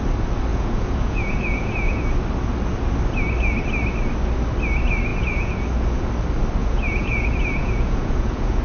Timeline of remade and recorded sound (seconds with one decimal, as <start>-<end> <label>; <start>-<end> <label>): 0.0-0.5 recorded; 0.5-2.0 remade; 2.0-5.1 recorded; 5.1-6.1 remade; 6.1-6.6 recorded; 6.6-8.6 remade